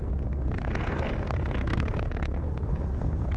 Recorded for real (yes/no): no